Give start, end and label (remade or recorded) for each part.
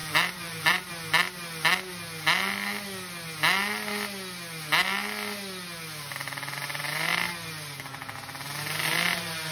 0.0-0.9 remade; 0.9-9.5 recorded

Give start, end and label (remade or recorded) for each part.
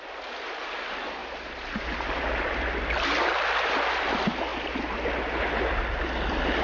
0.0-1.2 recorded; 1.2-2.7 remade; 2.7-6.6 recorded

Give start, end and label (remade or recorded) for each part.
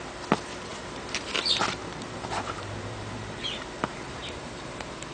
0.0-0.7 recorded; 0.7-1.3 remade; 1.3-1.8 recorded; 1.8-5.1 remade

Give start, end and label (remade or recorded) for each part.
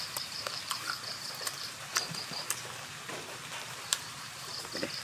0.0-1.9 remade; 1.9-3.6 recorded; 3.6-5.0 remade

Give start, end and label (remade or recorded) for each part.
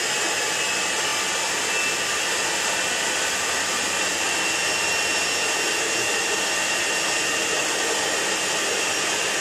0.0-9.4 recorded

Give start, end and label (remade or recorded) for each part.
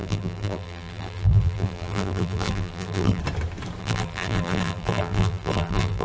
0.0-3.2 remade; 3.2-3.8 recorded; 3.8-6.0 remade